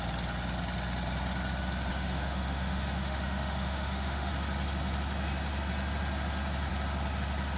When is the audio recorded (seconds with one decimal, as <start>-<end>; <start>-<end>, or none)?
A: 0.0-1.9; 4.3-7.6